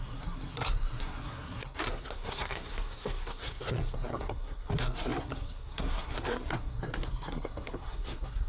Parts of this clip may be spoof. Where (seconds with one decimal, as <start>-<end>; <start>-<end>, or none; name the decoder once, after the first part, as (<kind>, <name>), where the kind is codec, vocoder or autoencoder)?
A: 0.0-8.5 (codec, SNAC)